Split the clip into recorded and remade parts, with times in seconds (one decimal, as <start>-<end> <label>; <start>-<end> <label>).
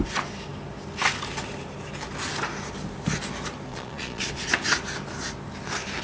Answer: 0.0-3.7 recorded; 3.7-4.3 remade; 4.3-6.0 recorded